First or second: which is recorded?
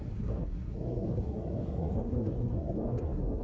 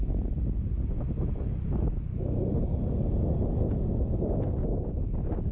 second